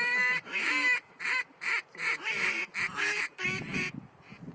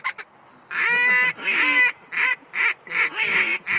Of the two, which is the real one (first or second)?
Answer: second